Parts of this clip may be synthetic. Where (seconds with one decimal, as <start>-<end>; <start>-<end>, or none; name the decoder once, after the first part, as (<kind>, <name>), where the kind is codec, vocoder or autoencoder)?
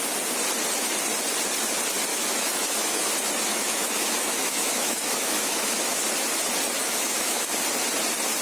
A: 2.1-3.1 (autoencoder, DAC-VAE); 3.5-5.8; 6.8-7.5